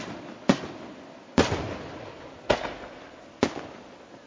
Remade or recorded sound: recorded